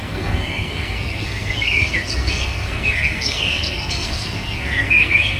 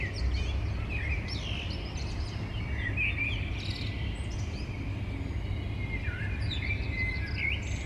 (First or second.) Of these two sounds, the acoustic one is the second